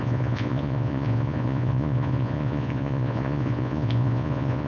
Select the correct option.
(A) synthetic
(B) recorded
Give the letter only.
A